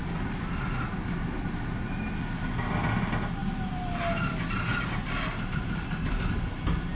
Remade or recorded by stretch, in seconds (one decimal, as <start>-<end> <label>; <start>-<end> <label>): 0.0-7.0 recorded